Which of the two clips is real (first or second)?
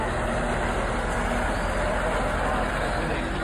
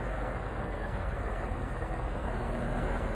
first